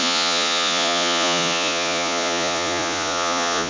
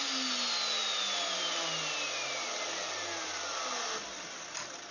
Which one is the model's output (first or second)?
first